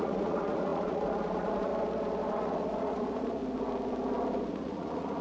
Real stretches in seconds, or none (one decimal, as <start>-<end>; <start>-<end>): 1.7-2.3; 3.4-4.5